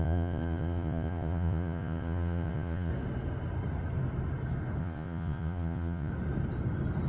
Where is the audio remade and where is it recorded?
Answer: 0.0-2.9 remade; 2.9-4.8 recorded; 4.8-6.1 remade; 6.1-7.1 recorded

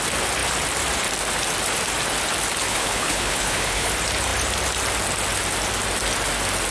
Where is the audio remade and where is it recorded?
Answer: 0.0-2.7 recorded; 2.7-3.9 remade; 3.9-6.7 recorded

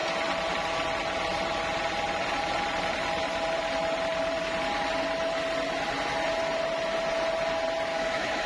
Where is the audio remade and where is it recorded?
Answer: 0.0-7.9 recorded; 7.9-8.5 remade

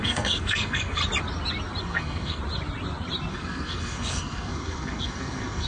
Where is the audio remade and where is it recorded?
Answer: 0.0-1.0 remade; 1.0-1.8 recorded; 1.8-2.4 remade; 2.4-3.3 recorded; 3.3-5.7 remade

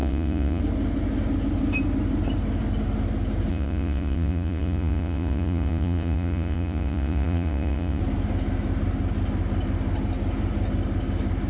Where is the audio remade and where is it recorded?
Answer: 0.0-0.6 remade; 0.6-3.5 recorded; 3.5-8.0 remade; 8.0-11.5 recorded

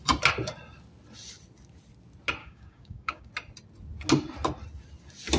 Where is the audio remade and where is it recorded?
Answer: 0.0-2.4 recorded; 2.4-3.3 remade; 3.3-5.4 recorded

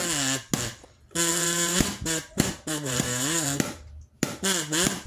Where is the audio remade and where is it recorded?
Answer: 0.0-1.3 recorded; 1.3-3.9 remade; 3.9-5.1 recorded